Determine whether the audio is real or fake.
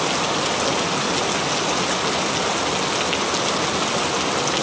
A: real